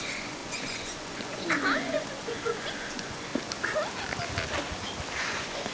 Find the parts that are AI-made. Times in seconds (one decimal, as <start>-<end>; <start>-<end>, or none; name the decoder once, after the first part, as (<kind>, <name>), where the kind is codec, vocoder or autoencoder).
0.0-3.3 (vocoder, Vocos); 5.2-5.7